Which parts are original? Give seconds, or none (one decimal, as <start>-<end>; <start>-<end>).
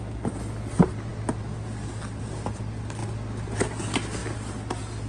0.0-5.1